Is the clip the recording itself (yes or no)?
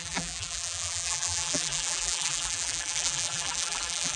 no